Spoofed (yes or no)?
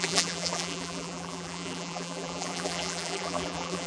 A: yes